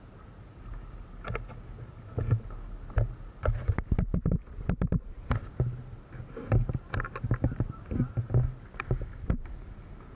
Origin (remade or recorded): recorded